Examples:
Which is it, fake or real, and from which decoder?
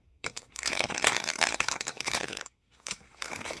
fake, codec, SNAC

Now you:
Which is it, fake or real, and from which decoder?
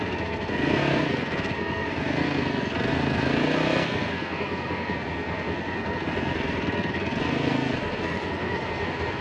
fake, codec, SNAC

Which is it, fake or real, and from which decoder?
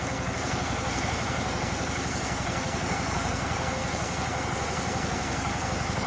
fake, codec, SNAC